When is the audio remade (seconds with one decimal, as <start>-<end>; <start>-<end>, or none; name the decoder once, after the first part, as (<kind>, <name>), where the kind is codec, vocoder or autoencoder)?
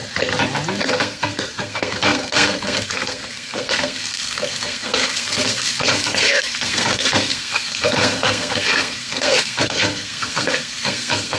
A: 0.8-11.4 (codec, SNAC)